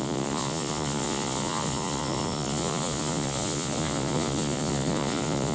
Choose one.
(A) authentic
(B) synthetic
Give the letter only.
B